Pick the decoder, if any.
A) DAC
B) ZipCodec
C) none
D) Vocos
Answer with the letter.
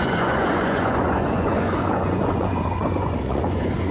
D